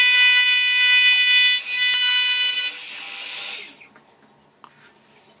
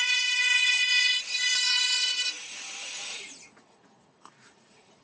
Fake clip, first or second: second